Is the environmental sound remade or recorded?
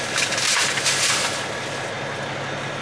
recorded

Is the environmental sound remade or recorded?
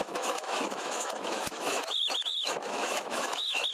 remade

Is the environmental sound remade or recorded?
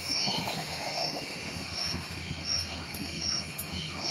remade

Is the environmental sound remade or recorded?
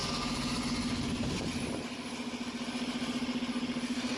recorded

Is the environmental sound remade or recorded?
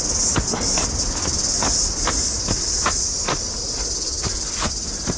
recorded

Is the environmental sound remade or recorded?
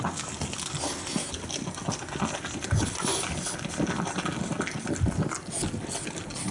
recorded